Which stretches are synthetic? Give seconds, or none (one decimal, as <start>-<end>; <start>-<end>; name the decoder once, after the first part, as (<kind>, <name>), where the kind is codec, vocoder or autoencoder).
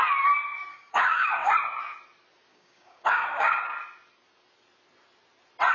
0.7-1.5 (codec, DAC); 2.5-3.6